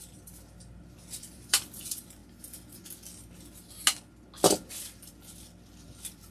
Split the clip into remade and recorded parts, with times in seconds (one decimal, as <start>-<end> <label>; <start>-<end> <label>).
0.0-2.2 remade; 2.2-4.7 recorded; 4.7-6.3 remade